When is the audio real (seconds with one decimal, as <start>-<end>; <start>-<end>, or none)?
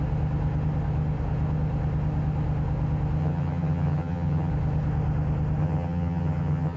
0.0-3.2; 4.5-5.6